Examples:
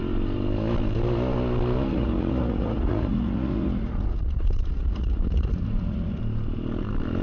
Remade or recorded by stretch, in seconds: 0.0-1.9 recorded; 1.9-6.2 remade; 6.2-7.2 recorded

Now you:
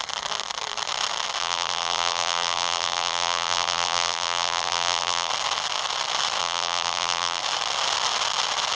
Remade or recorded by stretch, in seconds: 0.0-1.4 recorded; 1.4-5.3 remade; 5.3-6.4 recorded; 6.4-7.4 remade; 7.4-8.8 recorded

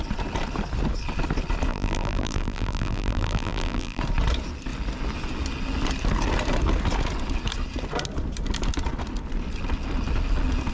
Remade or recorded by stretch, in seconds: 0.0-1.7 recorded; 1.7-4.0 remade; 4.0-10.7 recorded

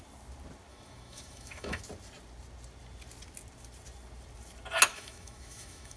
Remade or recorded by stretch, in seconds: 0.0-0.7 recorded; 0.7-1.8 remade; 1.8-4.9 recorded; 4.9-6.0 remade

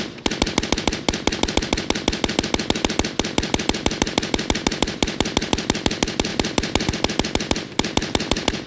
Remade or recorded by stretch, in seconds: 0.0-8.7 recorded

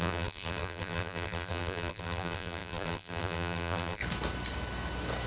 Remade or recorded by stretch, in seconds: 0.0-4.0 remade; 4.0-5.3 recorded

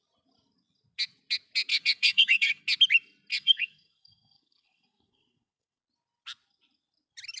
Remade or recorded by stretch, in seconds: 0.0-1.7 recorded; 1.7-2.6 remade; 2.6-3.3 recorded; 3.3-5.8 remade; 5.8-7.4 recorded